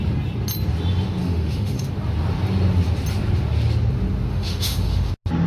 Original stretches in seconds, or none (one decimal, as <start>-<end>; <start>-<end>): 0.0-1.2; 1.9-4.3; 5.1-5.5